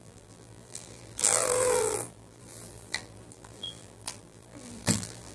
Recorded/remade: remade